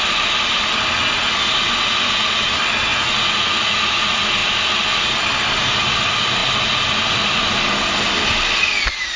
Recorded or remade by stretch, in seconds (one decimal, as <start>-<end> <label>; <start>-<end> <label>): 0.0-4.4 recorded; 4.4-5.7 remade; 5.7-9.2 recorded